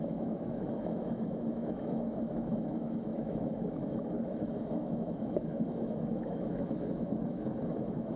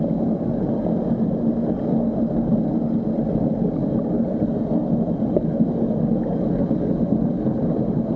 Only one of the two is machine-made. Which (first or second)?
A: first